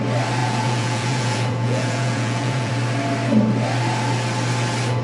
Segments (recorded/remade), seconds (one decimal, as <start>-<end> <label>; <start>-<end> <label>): 0.0-0.4 recorded; 0.4-2.7 remade; 2.7-5.0 recorded